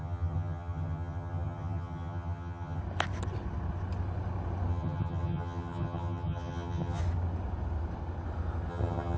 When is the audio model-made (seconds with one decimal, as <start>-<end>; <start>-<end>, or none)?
0.0-2.8; 4.7-7.0; 8.7-9.2